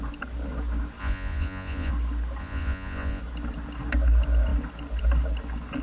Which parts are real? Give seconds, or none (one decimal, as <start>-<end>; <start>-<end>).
0.0-1.0; 1.9-2.4; 3.2-5.8